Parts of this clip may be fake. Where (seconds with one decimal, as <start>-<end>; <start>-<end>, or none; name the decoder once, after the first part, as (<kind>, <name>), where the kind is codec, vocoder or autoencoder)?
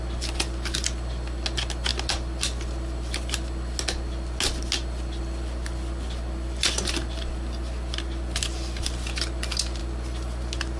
none